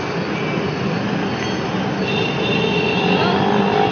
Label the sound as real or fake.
real